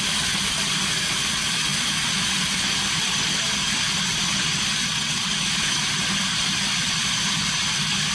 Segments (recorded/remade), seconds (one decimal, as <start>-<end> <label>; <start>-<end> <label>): 0.0-4.8 recorded; 4.8-5.3 remade; 5.3-8.1 recorded